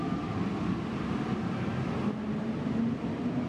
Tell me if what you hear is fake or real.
real